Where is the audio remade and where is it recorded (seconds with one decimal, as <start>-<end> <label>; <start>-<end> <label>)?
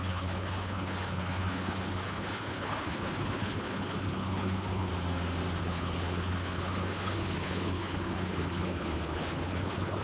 0.0-4.9 remade; 4.9-5.6 recorded; 5.6-10.0 remade